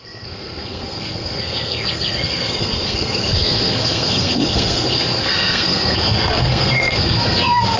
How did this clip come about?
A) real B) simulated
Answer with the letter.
B